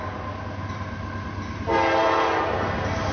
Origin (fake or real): real